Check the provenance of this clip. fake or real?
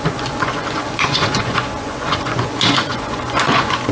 fake